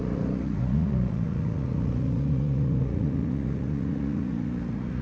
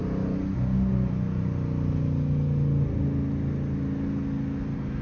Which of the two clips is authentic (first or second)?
second